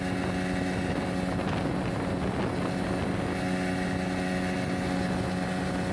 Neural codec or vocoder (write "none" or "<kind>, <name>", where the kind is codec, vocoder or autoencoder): none